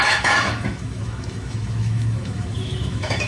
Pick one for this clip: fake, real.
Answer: fake